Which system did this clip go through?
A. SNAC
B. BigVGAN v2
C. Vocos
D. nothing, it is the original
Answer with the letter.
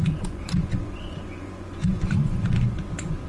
C